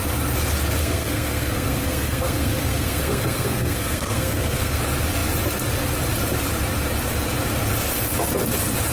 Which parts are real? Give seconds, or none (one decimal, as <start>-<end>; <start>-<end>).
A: 0.0-0.8; 4.8-8.9